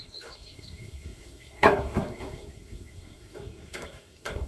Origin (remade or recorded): remade